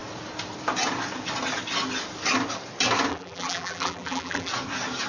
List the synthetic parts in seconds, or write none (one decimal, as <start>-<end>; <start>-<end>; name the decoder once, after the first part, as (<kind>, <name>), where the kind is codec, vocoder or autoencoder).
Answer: 3.1-4.5 (vocoder, BigVGAN v2)